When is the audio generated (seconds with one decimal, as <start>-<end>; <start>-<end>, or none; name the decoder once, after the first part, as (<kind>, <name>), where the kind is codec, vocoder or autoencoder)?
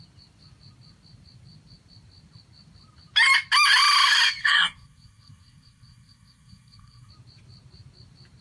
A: 4.4-7.1 (codec, SNAC)